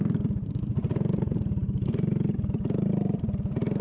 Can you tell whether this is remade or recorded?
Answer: recorded